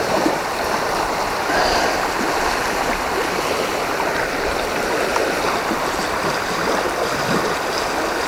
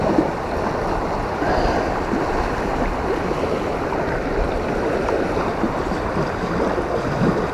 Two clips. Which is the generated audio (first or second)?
first